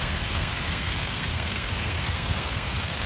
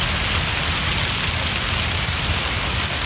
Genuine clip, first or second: second